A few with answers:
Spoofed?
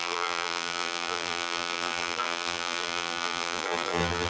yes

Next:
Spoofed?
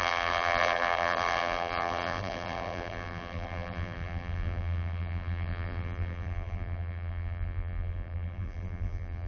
yes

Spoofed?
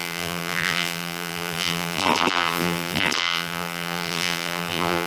yes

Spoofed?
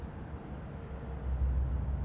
no